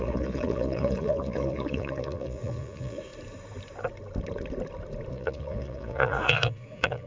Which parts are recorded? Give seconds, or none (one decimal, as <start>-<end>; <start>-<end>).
3.1-5.1